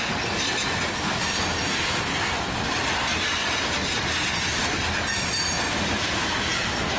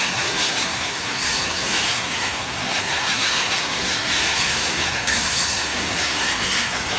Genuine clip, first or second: first